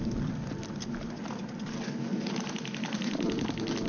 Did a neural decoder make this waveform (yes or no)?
no